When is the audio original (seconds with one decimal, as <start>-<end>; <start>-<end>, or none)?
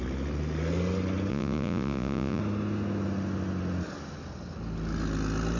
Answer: 0.0-1.3; 2.4-5.6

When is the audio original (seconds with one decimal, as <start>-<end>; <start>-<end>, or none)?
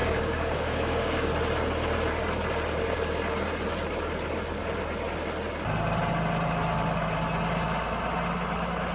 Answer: 1.3-8.9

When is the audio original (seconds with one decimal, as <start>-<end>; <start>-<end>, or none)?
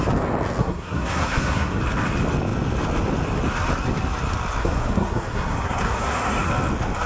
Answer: 0.0-0.6; 1.8-4.6; 6.5-7.1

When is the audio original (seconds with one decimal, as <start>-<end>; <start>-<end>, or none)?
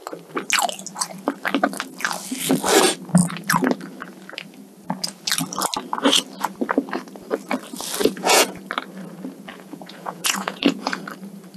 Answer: 0.0-8.0; 8.6-9.5; 11.0-11.6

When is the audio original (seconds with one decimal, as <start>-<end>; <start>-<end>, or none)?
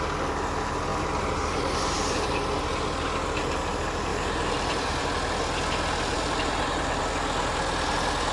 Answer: 0.0-4.1; 5.1-6.1; 7.0-8.3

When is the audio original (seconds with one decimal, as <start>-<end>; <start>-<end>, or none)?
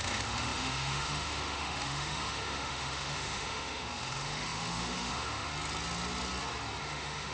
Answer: 5.5-6.8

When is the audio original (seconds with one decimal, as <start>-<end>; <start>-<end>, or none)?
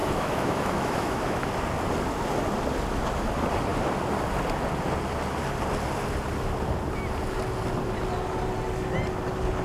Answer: 1.5-9.6